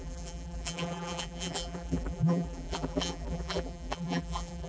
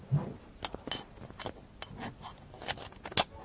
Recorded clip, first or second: second